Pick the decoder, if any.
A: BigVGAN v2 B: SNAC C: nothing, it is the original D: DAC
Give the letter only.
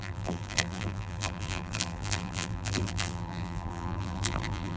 A